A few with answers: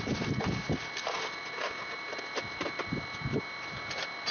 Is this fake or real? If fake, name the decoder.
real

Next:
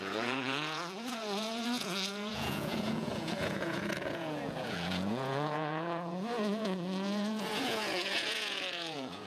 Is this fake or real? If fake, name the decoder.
fake, vocoder, Vocos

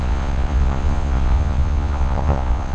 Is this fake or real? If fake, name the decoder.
fake, vocoder, Vocos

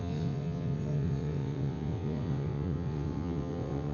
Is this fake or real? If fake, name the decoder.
fake, vocoder, WaveNeXt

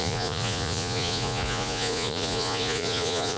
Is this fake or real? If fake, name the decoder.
fake, vocoder, Vocos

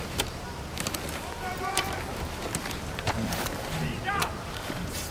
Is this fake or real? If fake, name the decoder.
fake, vocoder, BigVGAN v2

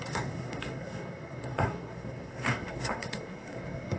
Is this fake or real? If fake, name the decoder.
fake, codec, SNAC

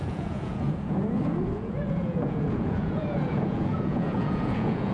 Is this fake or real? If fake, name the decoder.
fake, vocoder, Vocos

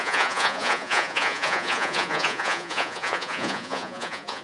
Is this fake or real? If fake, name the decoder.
fake, vocoder, Vocos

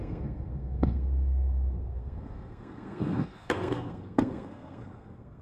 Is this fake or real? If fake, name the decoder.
fake, codec, SNAC